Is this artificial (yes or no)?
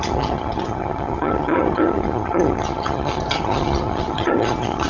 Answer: yes